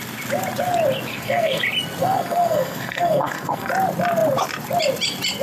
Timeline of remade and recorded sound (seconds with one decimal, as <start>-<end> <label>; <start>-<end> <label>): 0.0-1.1 recorded; 1.1-1.6 remade; 1.6-2.0 recorded; 2.0-3.7 remade; 3.7-5.4 recorded